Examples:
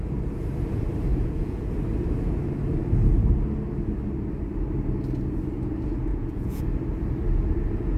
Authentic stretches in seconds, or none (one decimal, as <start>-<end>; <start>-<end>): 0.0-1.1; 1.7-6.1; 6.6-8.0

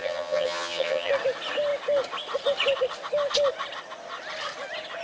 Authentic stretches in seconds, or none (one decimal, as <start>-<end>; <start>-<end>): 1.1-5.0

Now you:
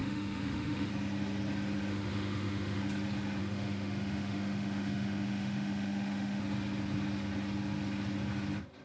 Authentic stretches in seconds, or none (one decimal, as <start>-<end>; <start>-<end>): 0.9-1.9; 2.8-3.4; 6.4-8.8